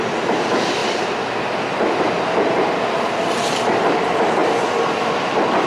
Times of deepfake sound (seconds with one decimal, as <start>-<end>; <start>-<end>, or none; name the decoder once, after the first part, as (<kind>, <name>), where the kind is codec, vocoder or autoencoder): none